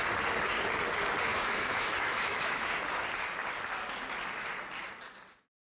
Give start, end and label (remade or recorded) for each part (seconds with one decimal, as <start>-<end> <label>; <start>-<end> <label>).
0.0-1.3 recorded; 1.3-2.7 remade; 2.7-5.7 recorded